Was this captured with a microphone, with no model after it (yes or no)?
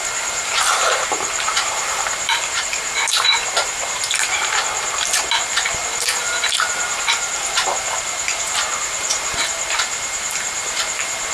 no